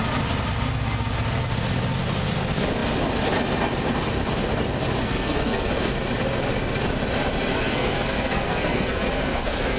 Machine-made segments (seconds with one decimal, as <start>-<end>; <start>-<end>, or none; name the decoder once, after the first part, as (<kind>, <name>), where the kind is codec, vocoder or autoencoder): 5.0-5.7 (codec, SNAC); 7.5-9.8